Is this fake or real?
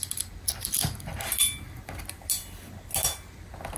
real